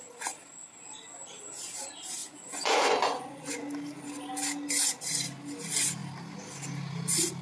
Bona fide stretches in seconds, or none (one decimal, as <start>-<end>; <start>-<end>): 0.0-2.2; 3.5-7.4